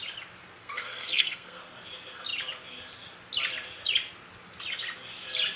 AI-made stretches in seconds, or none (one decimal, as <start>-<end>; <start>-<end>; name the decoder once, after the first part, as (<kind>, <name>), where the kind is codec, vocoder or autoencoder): 0.6-1.6 (codec, SNAC)